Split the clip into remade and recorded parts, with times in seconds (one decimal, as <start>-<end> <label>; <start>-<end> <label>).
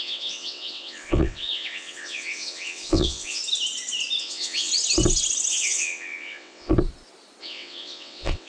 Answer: 0.0-3.4 remade; 3.4-4.2 recorded; 4.2-4.7 remade; 4.7-5.5 recorded; 5.5-6.7 remade; 6.7-7.4 recorded; 7.4-8.5 remade